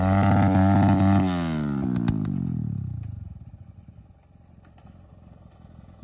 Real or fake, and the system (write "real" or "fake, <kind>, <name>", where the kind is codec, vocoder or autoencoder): real